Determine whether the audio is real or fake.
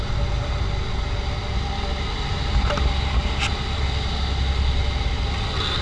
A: real